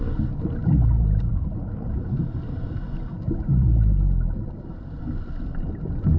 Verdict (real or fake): real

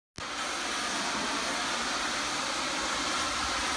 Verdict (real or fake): real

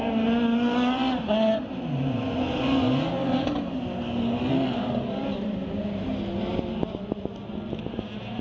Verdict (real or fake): real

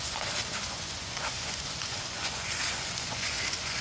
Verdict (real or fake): fake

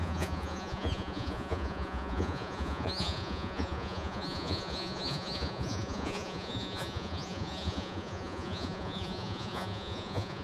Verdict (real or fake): fake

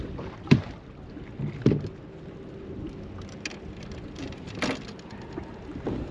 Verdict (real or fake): real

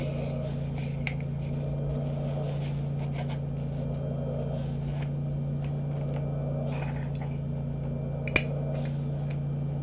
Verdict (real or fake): real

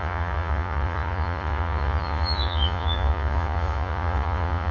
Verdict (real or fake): fake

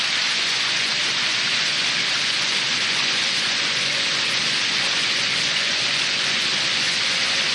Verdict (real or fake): fake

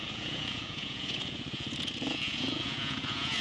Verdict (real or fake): fake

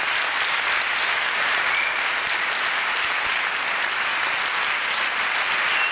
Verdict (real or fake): real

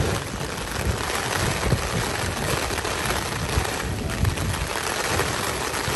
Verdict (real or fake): real